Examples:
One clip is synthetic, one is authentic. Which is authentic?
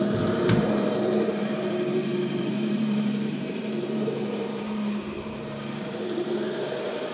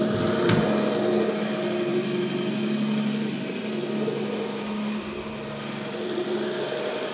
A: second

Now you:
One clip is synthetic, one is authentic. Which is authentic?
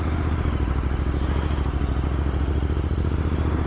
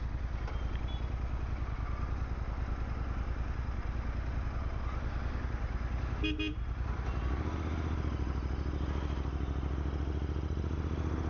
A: second